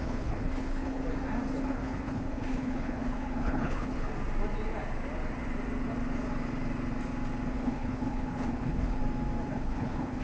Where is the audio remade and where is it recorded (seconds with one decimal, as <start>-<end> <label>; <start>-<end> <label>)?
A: 0.0-1.0 remade; 1.0-1.6 recorded; 1.6-4.1 remade; 4.1-7.5 recorded; 7.5-9.0 remade; 9.0-9.5 recorded; 9.5-10.2 remade